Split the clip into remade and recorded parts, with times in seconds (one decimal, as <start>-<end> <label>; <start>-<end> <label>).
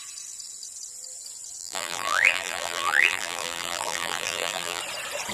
0.0-1.6 recorded; 1.6-4.8 remade; 4.8-5.3 recorded